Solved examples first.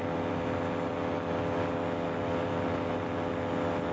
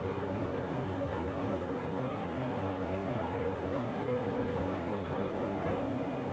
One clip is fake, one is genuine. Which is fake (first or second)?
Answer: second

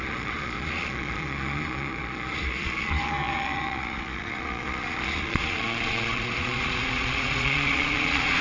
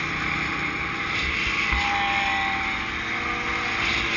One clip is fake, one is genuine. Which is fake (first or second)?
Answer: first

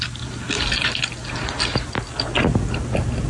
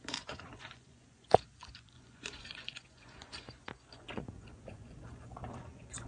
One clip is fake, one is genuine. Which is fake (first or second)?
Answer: second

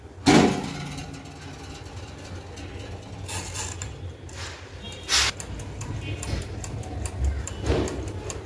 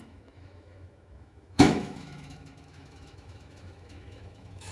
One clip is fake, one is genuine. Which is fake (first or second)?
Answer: second